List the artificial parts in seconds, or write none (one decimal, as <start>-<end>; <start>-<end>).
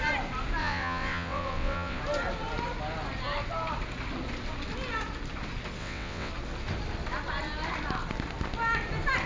0.6-2.0; 5.8-6.3